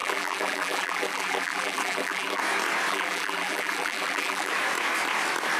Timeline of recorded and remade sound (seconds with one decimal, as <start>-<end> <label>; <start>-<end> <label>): 0.0-2.4 remade; 2.4-2.9 recorded; 2.9-4.5 remade; 4.5-5.6 recorded